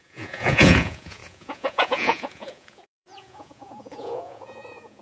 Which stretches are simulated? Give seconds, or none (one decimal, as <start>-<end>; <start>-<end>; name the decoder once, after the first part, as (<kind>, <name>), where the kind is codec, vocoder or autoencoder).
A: 0.0-5.0 (vocoder, Vocos)